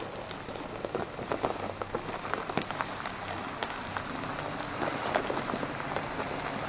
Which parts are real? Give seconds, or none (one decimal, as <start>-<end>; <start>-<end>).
0.0-6.7